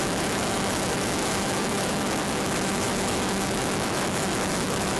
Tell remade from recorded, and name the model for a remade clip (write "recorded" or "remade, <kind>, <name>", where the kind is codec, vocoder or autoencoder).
remade, autoencoder, DAC-VAE